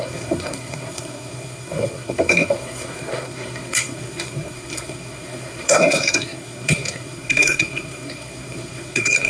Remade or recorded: remade